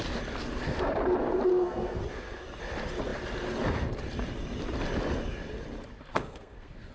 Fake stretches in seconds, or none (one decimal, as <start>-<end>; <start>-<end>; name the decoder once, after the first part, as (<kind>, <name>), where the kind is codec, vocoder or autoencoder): 1.5-2.0 (codec, SNAC); 6.1-6.9

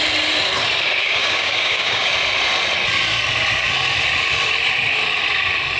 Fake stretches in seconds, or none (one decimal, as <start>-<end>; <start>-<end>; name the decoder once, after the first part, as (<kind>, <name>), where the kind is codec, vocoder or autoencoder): 1.0-2.1 (codec, DAC)

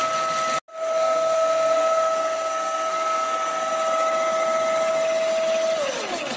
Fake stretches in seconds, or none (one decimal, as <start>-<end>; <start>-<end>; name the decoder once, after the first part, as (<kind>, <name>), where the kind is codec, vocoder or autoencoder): 0.7-3.7 (codec, SNAC)

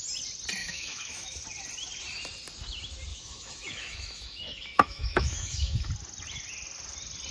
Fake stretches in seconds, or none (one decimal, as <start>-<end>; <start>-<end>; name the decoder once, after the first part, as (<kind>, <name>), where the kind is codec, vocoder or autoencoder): 0.6-1.4 (autoencoder, DAC-VAE); 3.1-5.9